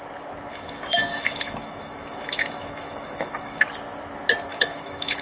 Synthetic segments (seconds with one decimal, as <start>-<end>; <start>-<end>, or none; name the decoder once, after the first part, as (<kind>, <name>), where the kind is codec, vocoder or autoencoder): 0.5-3.6 (autoencoder, DAC-VAE); 4.5-5.2